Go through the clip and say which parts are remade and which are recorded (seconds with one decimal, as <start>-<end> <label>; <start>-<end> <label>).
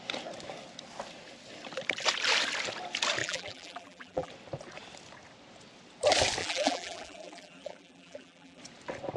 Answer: 0.0-3.2 recorded; 3.2-4.3 remade; 4.3-6.4 recorded; 6.4-8.6 remade; 8.6-9.2 recorded